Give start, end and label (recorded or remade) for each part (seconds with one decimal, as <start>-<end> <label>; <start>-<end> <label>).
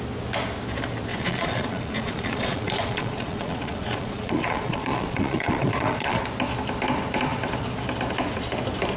0.0-1.1 recorded; 1.1-6.2 remade; 6.2-9.0 recorded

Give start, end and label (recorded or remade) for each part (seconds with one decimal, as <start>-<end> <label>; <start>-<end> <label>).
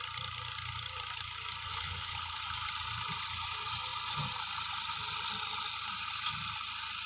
0.0-1.7 recorded; 1.7-2.4 remade; 2.4-7.1 recorded